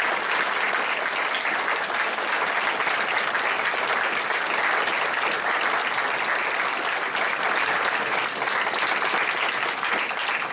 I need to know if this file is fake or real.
real